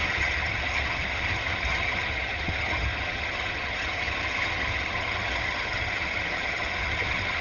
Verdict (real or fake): fake